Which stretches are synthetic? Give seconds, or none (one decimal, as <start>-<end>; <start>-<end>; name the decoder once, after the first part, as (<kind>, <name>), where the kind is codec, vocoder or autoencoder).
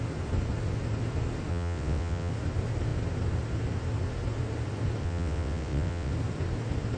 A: 1.5-2.3 (vocoder, WaveNeXt); 5.0-6.1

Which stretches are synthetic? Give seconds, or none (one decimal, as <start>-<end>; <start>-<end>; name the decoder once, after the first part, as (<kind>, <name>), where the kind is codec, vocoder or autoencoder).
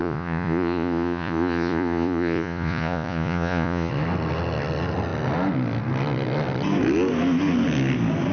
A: 0.0-3.9 (vocoder, Vocos)